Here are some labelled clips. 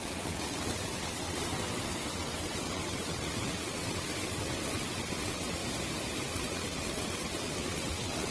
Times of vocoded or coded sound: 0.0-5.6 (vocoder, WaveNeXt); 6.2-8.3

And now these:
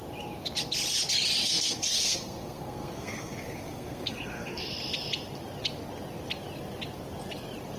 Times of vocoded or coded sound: 1.4-4.7 (codec, SNAC)